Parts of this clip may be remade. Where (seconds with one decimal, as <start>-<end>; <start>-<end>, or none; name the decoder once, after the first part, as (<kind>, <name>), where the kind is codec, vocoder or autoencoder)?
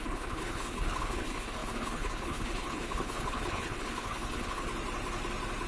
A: 0.0-4.7 (codec, HILCodec)